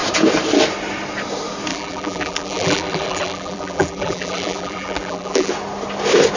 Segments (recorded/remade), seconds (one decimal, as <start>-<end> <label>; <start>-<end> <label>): 0.0-1.7 recorded; 1.7-5.5 remade; 5.5-6.4 recorded